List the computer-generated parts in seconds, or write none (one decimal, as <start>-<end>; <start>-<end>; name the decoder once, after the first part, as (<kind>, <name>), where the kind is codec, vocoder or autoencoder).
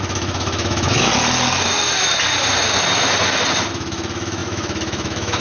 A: 0.0-1.1 (autoencoder, DAC-VAE); 3.7-5.4